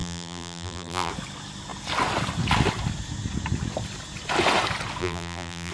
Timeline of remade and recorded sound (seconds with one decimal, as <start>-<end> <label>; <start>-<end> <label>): 0.0-1.1 remade; 1.1-5.0 recorded; 5.0-5.7 remade